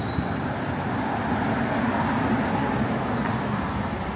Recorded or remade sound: recorded